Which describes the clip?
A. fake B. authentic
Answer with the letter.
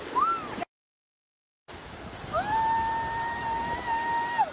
B